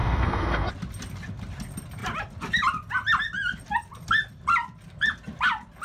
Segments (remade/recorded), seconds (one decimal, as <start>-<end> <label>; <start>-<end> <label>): 0.0-0.7 remade; 0.7-5.8 recorded